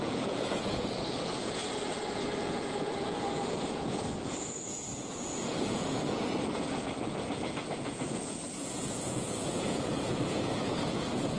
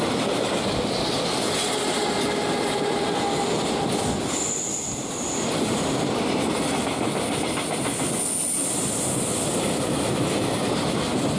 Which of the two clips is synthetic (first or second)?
first